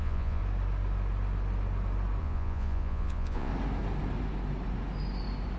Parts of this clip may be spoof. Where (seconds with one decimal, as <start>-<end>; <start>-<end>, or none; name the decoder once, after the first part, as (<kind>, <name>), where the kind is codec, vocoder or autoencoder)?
0.0-0.4 (vocoder, Vocos); 2.2-3.5